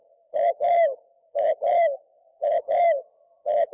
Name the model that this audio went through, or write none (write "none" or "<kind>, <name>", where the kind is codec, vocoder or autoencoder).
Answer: codec, DAC